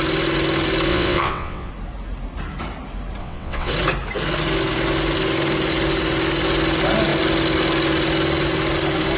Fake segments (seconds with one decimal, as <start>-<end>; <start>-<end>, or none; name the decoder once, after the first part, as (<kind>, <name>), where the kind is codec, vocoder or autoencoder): 0.9-1.7 (vocoder, WaveNeXt); 3.2-3.7